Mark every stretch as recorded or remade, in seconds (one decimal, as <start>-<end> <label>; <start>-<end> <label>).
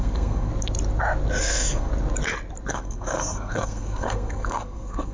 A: 0.0-0.5 remade; 0.5-1.4 recorded; 1.4-1.9 remade; 1.9-2.7 recorded; 2.7-5.1 remade